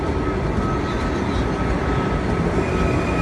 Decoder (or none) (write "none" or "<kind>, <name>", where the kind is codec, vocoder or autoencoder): none